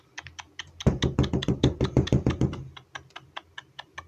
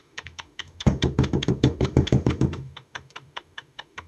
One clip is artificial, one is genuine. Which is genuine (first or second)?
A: first